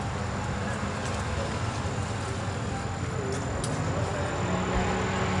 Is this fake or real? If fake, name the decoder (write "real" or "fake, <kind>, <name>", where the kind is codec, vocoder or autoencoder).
real